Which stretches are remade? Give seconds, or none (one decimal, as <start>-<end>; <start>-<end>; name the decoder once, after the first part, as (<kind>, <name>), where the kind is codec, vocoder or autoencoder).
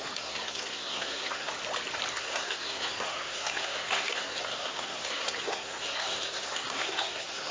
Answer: 0.0-1.5 (codec, SNAC); 2.1-7.5